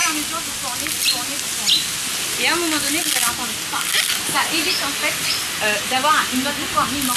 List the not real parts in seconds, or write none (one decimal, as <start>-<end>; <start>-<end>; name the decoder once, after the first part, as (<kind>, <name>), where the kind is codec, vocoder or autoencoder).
none